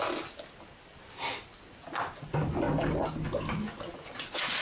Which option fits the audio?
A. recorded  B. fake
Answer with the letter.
A